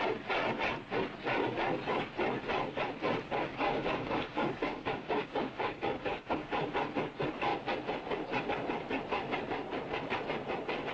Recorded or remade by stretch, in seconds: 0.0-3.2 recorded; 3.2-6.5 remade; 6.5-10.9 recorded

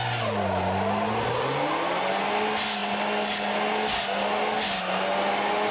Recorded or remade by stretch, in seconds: 0.0-5.7 recorded

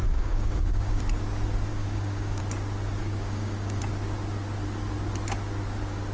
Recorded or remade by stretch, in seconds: 0.0-1.0 remade; 1.0-1.7 recorded; 1.7-2.4 remade; 2.4-3.0 recorded; 3.0-3.8 remade; 3.8-6.1 recorded

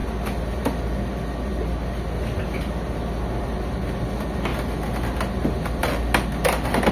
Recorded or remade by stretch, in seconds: 0.0-6.9 recorded

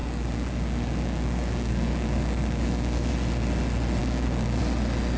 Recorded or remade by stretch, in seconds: 0.0-3.1 remade; 3.1-4.0 recorded; 4.0-4.6 remade; 4.6-5.2 recorded

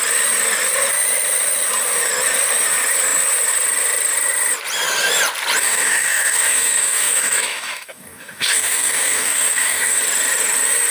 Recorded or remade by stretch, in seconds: 0.0-5.6 recorded; 5.6-10.0 remade; 10.0-10.9 recorded